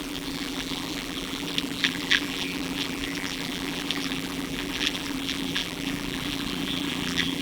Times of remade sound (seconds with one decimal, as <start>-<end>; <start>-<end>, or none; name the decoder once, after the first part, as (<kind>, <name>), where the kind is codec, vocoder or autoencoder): 0.0-7.4 (vocoder, BigVGAN v2)